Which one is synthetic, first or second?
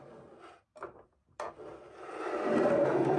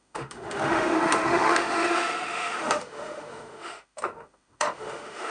second